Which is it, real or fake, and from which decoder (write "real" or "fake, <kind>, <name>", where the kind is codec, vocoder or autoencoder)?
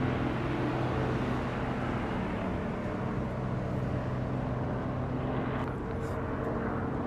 real